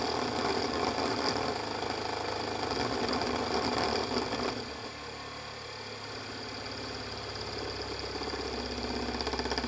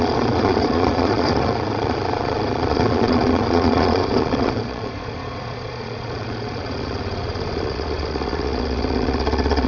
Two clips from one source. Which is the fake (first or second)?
second